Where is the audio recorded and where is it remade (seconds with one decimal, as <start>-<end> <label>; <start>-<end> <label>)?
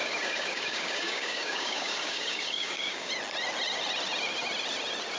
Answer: 0.0-3.1 remade; 3.1-5.2 recorded